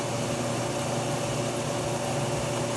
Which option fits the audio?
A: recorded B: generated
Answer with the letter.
A